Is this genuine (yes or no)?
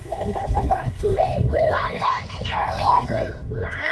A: no